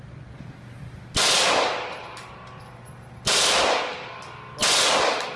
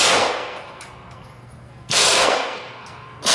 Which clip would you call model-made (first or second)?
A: second